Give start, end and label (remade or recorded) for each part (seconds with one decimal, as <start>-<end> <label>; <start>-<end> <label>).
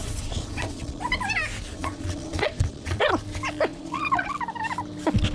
0.0-1.0 remade; 1.0-1.7 recorded; 1.7-3.1 remade; 3.1-3.7 recorded; 3.7-4.3 remade; 4.3-5.3 recorded